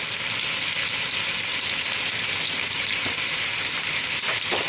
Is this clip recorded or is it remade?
recorded